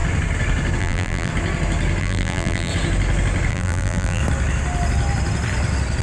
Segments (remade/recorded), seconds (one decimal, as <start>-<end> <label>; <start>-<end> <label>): 0.0-0.8 recorded; 0.8-1.3 remade; 1.3-2.0 recorded; 2.0-2.7 remade; 2.7-3.5 recorded; 3.5-4.2 remade; 4.2-6.0 recorded